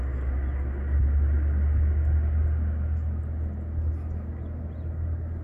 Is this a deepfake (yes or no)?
no